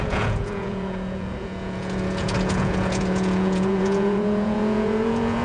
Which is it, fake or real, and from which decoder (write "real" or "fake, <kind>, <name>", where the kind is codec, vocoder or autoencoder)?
fake, vocoder, Vocos